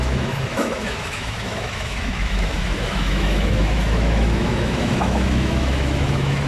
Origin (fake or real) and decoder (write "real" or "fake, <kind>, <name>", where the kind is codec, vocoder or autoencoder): fake, autoencoder, DAC-VAE